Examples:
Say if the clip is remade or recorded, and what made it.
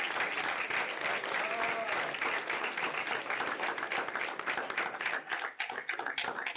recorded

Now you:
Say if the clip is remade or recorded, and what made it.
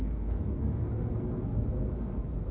remade, codec, SNAC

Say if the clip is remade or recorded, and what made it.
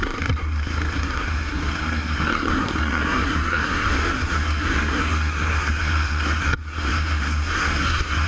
remade, codec, SNAC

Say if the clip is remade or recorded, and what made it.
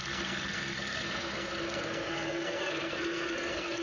remade, codec, SNAC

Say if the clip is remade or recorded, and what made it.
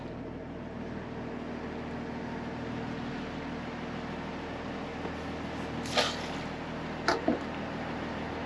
recorded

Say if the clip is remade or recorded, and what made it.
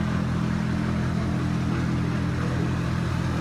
recorded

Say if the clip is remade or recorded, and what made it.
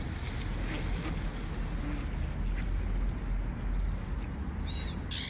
recorded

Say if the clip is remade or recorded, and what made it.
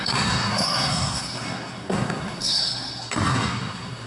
remade, codec, SNAC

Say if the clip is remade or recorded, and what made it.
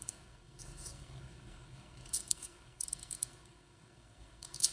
remade, codec, SNAC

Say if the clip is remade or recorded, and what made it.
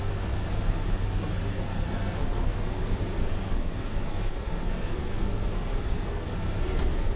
remade, codec, SNAC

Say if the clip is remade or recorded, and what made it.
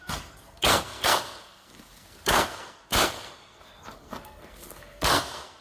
remade, codec, SNAC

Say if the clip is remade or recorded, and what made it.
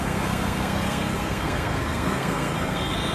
remade, codec, SNAC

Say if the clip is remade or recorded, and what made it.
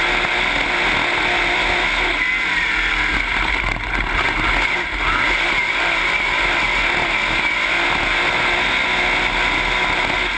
recorded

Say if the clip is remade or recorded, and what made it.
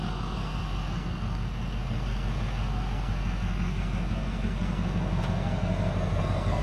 remade, codec, SNAC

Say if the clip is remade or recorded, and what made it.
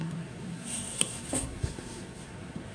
remade, codec, SNAC